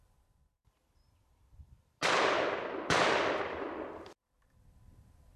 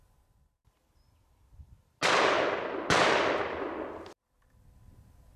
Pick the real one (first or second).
second